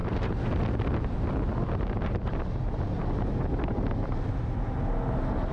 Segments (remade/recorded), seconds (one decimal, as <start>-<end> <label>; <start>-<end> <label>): 0.0-5.5 recorded